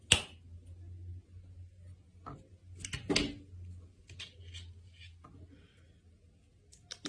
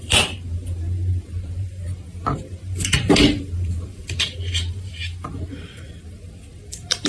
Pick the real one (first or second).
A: first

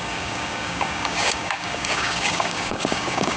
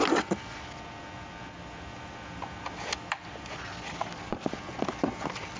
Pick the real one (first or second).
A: second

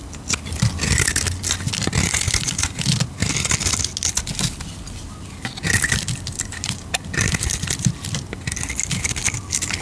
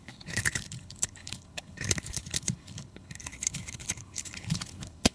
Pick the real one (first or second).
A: first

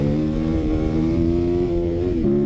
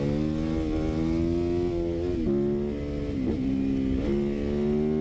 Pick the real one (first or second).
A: second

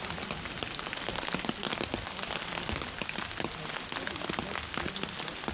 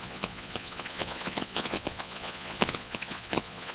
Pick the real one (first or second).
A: first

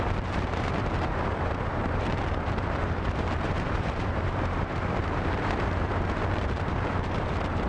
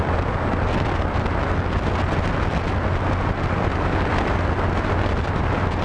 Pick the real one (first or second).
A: second